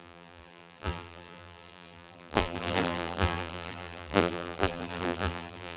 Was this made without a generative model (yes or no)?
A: no